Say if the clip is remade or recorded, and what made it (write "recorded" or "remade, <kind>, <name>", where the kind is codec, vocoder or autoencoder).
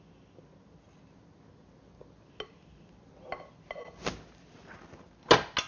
recorded